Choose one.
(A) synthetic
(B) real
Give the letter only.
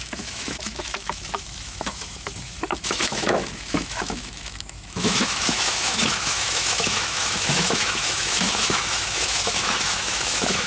A